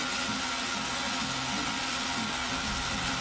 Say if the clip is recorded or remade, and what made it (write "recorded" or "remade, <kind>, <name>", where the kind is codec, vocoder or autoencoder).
recorded